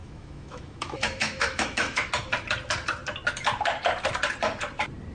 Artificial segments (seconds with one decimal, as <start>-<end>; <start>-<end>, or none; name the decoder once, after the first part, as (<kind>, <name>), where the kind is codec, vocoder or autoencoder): 0.0-2.1 (autoencoder, DAC-VAE)